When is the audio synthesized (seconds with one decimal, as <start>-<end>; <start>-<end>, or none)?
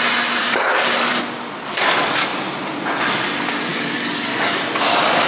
0.4-1.1; 3.7-4.6